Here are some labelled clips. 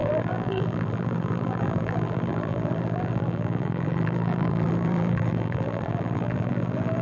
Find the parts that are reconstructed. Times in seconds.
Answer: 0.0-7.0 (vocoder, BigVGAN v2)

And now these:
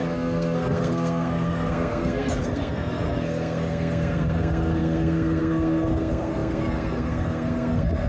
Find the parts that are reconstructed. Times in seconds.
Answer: 0.0-8.1 (codec, SNAC)

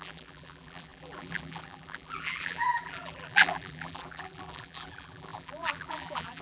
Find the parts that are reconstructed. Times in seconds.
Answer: 0.0-6.4 (vocoder, BigVGAN v2)

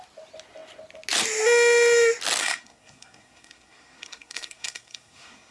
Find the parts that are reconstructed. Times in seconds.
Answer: 2.4-5.5 (codec, SNAC)

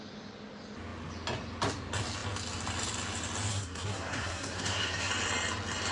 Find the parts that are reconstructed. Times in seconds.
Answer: 3.5-5.1 (codec, SNAC)